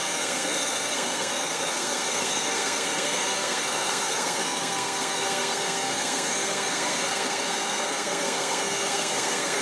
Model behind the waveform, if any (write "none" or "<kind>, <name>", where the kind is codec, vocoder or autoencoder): codec, SNAC